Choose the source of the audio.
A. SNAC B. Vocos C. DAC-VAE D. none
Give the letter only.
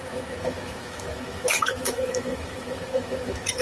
C